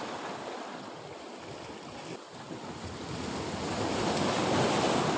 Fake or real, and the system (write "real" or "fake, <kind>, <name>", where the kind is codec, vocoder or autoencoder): real